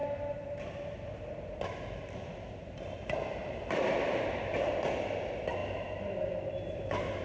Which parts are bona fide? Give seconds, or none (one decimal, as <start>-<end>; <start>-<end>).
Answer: 0.0-5.6